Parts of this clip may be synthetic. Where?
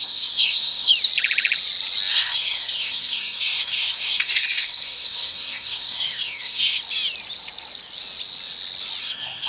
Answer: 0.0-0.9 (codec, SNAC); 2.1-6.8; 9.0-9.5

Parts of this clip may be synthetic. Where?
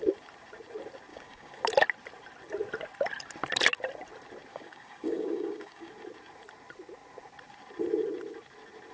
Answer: 1.1-1.6 (codec, DAC); 4.5-5.9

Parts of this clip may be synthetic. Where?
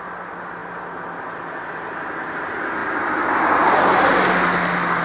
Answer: none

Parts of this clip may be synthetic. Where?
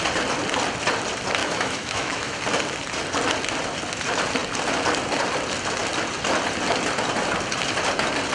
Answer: 1.4-2.4 (autoencoder, DAC-VAE)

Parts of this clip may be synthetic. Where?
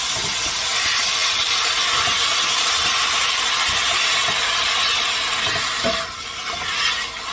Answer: none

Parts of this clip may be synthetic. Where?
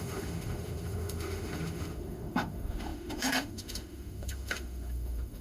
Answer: 0.0-5.4 (autoencoder, DAC-VAE)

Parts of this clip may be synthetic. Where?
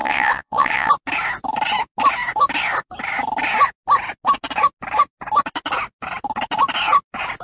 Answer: 0.0-0.9 (vocoder, WaveNeXt)